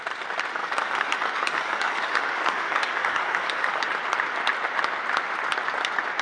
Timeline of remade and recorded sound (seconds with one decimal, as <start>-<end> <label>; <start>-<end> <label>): 0.0-0.6 recorded; 0.6-3.9 remade; 3.9-6.2 recorded